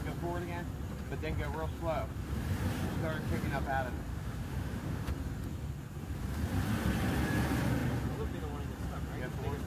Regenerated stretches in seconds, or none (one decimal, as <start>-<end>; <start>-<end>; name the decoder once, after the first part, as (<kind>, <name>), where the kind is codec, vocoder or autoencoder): 4.1-5.1 (autoencoder, DAC-VAE)

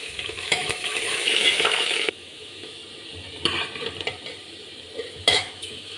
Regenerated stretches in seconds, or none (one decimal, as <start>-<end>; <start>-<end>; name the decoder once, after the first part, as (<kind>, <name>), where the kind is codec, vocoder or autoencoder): 0.0-2.8 (autoencoder, DAC-VAE); 5.1-6.0

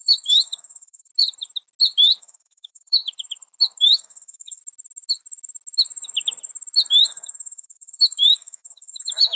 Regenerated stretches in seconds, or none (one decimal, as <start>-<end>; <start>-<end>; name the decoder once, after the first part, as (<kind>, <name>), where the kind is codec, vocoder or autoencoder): 0.0-1.1 (autoencoder, DAC-VAE); 2.2-3.0; 3.8-4.6; 6.9-9.4

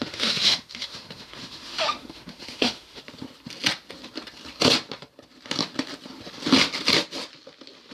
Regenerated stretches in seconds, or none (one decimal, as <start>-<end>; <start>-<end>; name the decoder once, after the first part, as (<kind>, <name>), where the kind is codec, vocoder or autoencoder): 0.0-3.0 (autoencoder, DAC-VAE)